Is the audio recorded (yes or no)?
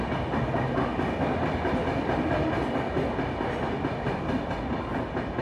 yes